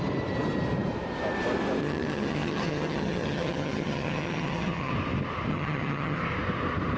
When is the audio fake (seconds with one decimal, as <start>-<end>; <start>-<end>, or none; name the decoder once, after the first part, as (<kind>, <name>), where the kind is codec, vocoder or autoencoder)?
1.8-4.9 (vocoder, HiFi-GAN); 5.5-6.2